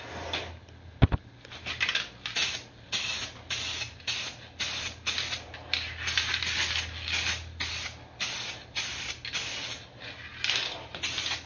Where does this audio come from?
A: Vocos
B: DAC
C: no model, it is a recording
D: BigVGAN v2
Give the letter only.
C